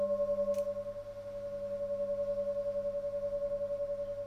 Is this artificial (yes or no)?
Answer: no